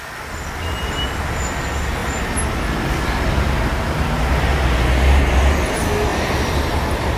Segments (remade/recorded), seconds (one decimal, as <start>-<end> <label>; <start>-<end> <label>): 0.0-6.1 recorded; 6.1-7.2 remade